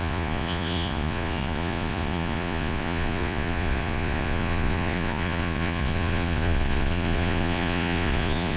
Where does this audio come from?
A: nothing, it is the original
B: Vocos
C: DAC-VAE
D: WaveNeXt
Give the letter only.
B